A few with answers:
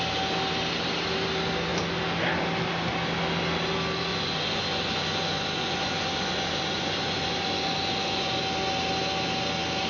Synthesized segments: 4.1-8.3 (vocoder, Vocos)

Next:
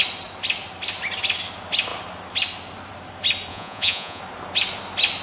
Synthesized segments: 3.5-4.2 (vocoder, Vocos)

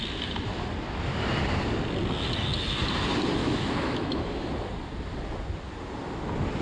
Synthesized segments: 3.4-4.5 (autoencoder, DAC-VAE)

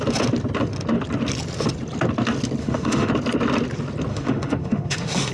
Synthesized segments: 2.6-3.1 (autoencoder, DAC-VAE); 4.1-5.3

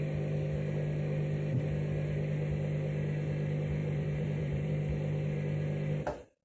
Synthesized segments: 3.8-4.7 (vocoder, BigVGAN v2)

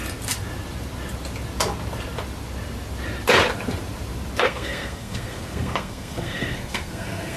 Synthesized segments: 4.4-7.4 (codec, SNAC)

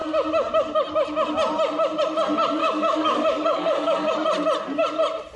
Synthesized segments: 2.6-4.1 (codec, DAC)